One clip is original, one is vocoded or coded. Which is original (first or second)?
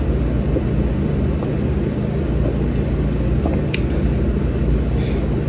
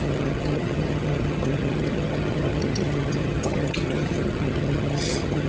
first